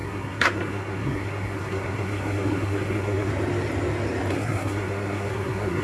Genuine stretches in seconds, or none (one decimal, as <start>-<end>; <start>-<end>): 3.3-4.3